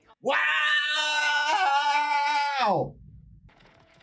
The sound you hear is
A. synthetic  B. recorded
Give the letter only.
A